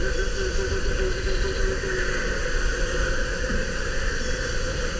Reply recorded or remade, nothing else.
recorded